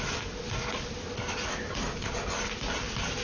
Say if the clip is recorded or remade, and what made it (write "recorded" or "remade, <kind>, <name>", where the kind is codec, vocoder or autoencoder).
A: recorded